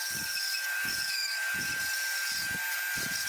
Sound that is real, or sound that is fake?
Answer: real